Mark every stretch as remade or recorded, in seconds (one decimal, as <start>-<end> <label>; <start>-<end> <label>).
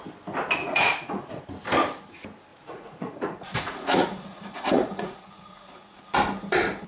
0.0-0.6 recorded; 0.6-1.4 remade; 1.4-2.5 recorded; 2.5-6.0 remade; 6.0-6.9 recorded